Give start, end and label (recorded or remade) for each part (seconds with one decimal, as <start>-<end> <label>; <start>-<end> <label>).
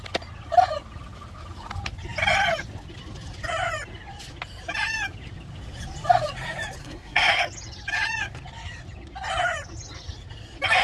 0.0-6.8 recorded; 6.8-7.3 remade; 7.3-10.8 recorded